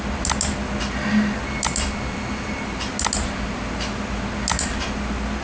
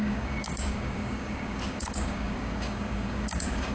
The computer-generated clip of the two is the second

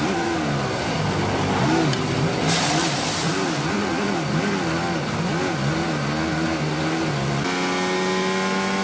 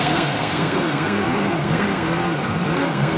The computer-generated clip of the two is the second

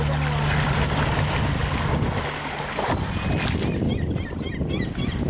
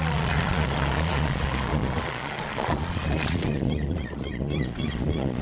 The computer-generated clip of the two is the second